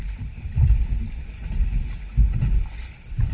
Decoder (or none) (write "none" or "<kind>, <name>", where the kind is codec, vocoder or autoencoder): none